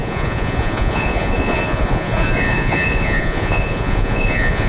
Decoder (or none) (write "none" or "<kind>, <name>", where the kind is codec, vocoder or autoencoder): vocoder, Vocos